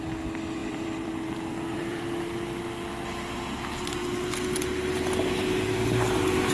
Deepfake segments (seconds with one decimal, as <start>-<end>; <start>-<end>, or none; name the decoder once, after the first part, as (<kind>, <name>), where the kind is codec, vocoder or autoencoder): 0.6-2.0 (vocoder, BigVGAN v2)